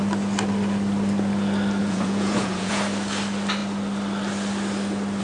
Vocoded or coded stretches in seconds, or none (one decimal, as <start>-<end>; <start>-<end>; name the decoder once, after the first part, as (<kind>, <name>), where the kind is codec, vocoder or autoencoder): 1.8-2.8 (vocoder, Vocos)